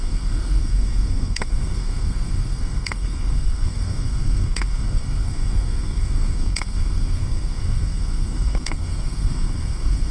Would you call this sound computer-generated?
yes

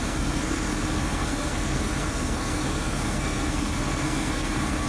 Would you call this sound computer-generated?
yes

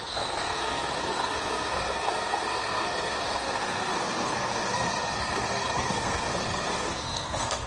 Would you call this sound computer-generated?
yes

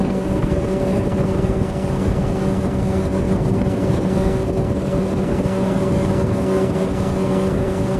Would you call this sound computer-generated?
yes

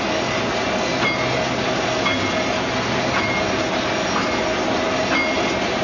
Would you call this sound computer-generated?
no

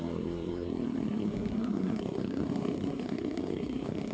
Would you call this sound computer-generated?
yes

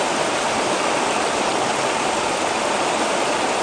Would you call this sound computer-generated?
no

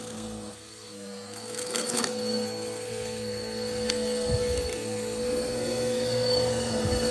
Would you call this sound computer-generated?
yes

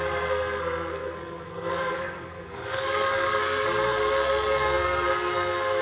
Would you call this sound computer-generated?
yes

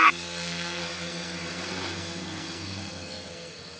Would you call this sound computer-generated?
yes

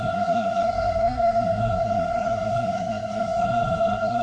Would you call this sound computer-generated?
yes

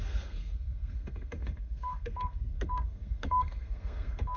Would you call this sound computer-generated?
yes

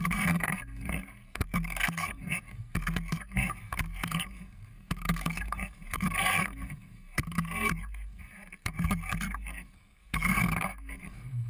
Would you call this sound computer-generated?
yes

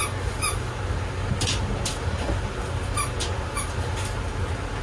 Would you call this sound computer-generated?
no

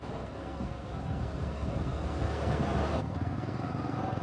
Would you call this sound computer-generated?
yes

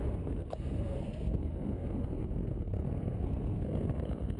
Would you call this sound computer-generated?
yes